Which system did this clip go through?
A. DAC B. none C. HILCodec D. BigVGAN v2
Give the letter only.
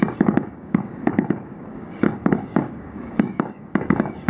A